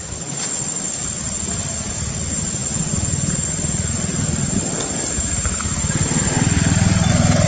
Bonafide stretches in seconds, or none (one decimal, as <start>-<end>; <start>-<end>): 0.0-7.5